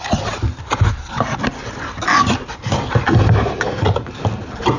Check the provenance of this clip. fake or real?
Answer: real